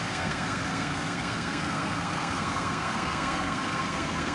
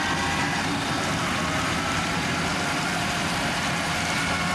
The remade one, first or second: first